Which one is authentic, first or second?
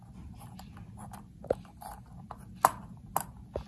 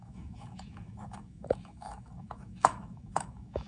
first